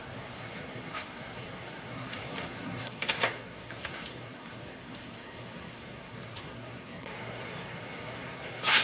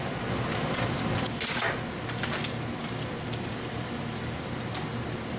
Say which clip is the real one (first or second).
second